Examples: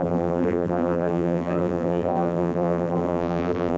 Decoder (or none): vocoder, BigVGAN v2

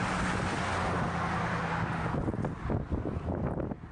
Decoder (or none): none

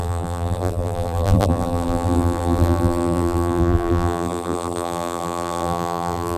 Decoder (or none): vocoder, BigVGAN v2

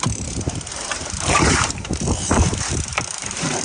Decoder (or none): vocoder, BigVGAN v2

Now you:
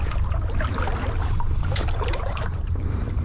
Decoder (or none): vocoder, BigVGAN v2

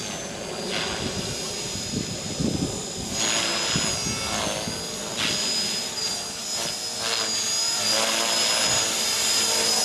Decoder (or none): none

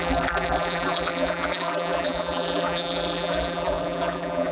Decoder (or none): vocoder, BigVGAN v2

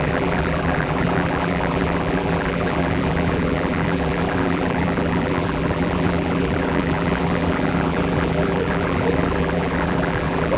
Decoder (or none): vocoder, BigVGAN v2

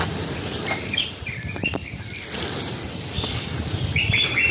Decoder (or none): vocoder, BigVGAN v2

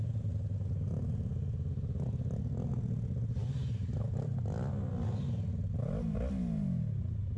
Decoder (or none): none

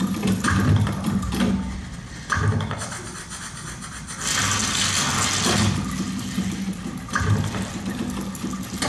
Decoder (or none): none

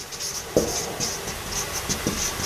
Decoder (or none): none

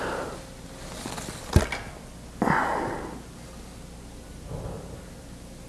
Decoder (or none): none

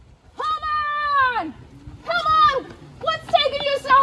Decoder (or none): none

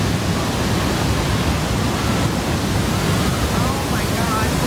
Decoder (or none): none